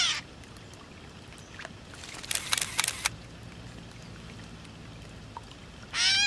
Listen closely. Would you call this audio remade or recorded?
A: recorded